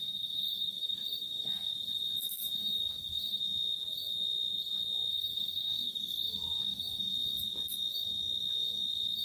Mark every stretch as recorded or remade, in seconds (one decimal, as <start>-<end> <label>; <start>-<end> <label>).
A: 0.0-1.7 remade; 1.7-2.6 recorded; 2.6-3.4 remade; 3.4-5.1 recorded; 5.1-7.1 remade; 7.1-9.2 recorded